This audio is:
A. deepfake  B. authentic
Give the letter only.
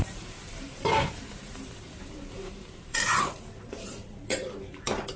A